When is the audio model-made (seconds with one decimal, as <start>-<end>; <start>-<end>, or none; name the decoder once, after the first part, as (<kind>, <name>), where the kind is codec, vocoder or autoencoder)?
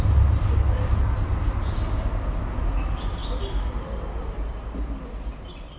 none